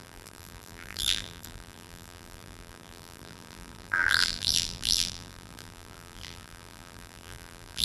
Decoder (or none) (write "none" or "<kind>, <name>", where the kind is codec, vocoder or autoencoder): vocoder, BigVGAN v2